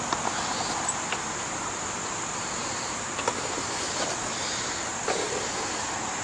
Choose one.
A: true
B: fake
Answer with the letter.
A